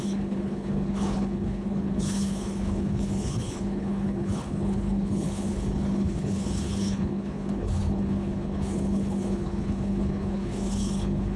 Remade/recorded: remade